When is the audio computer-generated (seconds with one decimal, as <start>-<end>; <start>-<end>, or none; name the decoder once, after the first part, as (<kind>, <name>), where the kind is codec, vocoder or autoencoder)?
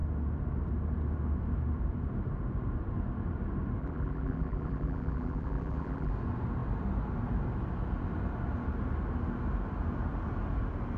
3.8-6.1 (vocoder, BigVGAN v2)